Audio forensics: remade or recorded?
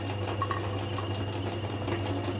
recorded